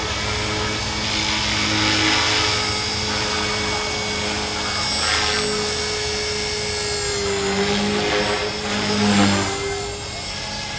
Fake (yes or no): no